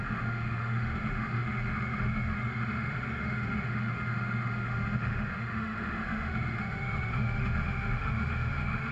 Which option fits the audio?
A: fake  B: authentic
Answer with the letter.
A